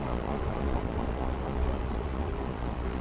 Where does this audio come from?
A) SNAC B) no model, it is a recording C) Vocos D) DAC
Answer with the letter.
C